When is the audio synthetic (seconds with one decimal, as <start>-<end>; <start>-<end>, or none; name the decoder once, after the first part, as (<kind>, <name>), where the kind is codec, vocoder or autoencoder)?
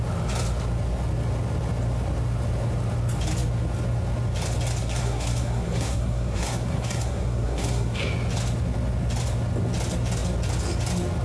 4.8-8.1 (codec, SNAC)